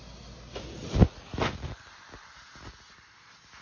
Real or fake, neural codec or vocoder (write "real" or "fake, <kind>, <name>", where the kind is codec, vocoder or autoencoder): real